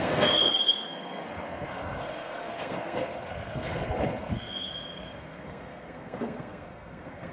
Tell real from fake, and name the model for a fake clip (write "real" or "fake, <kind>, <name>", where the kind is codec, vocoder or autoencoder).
fake, codec, SNAC